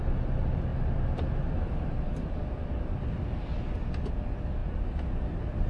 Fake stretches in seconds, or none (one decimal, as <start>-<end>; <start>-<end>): none

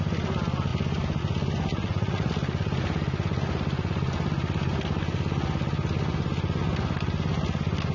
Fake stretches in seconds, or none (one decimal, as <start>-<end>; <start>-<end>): 1.7-2.3

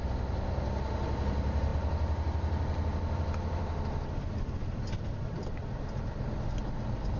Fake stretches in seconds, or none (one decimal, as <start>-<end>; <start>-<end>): none